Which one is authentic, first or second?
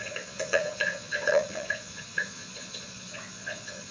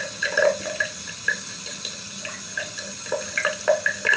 second